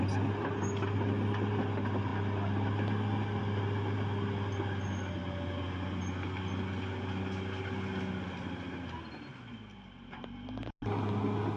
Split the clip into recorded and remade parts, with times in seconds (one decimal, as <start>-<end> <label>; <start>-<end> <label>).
0.0-11.6 recorded